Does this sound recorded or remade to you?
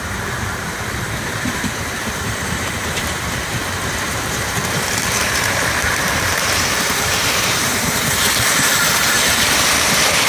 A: remade